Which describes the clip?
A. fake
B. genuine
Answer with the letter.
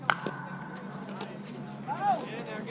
B